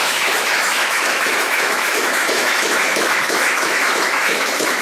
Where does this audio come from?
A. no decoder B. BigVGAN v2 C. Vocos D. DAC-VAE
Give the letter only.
D